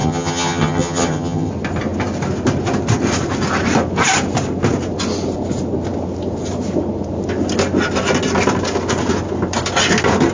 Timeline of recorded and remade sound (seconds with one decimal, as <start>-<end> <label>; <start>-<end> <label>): 0.0-1.5 remade; 1.5-10.3 recorded